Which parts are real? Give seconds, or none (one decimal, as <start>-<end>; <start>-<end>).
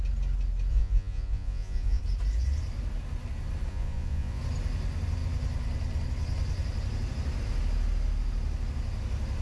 0.0-0.7; 2.0-3.7; 4.4-9.4